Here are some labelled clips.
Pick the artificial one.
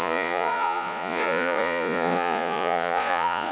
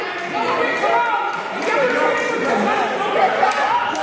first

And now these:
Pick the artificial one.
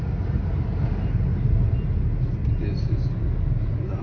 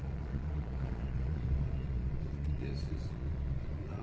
second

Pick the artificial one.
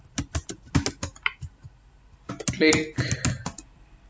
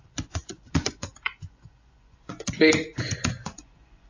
second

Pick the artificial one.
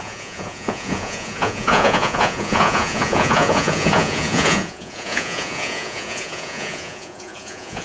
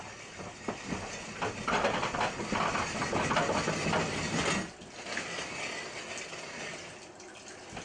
first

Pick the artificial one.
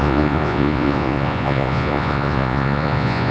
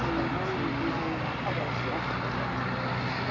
first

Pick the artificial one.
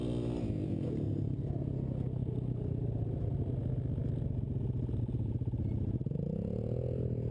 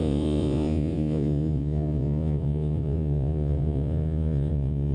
second